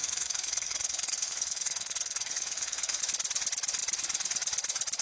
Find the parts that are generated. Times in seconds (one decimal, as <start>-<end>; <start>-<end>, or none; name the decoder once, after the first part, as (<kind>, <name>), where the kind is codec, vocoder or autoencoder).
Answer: 0.0-3.0 (codec, SNAC)

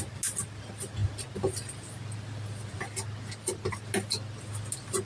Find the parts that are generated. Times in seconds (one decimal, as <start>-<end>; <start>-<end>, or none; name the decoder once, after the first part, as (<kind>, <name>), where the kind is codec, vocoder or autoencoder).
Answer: none